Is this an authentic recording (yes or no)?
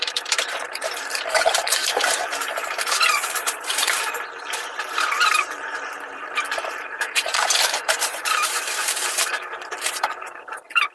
no